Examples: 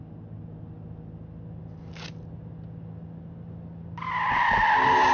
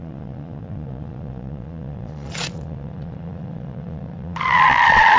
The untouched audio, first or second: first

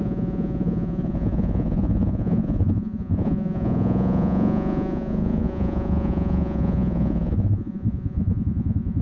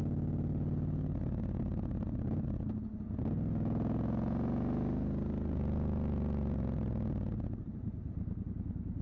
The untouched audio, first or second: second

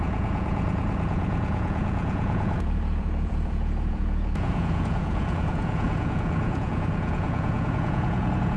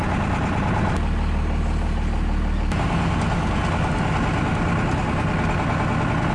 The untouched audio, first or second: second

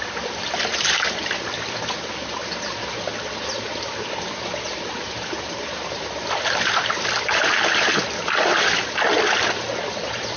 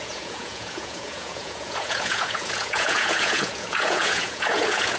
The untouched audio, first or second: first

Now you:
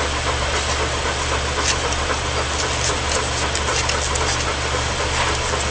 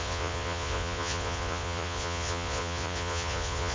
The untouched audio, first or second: first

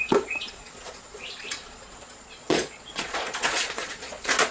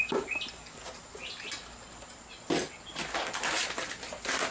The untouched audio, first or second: second